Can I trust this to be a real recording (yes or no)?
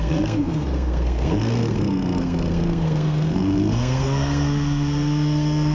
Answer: no